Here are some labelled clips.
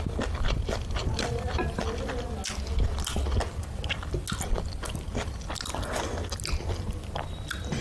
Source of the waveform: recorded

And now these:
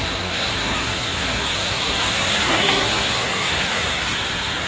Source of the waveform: remade